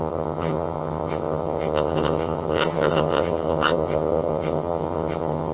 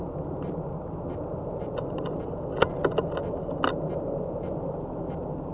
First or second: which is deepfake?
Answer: first